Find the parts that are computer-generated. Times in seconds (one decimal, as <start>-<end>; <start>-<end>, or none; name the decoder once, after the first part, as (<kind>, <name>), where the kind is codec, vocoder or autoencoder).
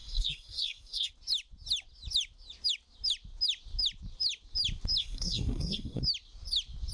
0.0-1.1 (codec, SNAC); 5.0-6.0